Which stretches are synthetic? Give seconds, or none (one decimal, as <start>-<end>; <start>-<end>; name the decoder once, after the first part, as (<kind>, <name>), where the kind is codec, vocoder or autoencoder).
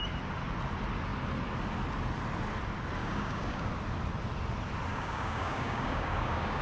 3.0-3.7 (codec, DAC); 4.9-6.6